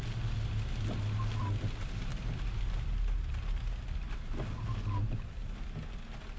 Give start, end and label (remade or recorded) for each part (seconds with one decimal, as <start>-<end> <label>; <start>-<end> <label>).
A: 0.0-6.4 recorded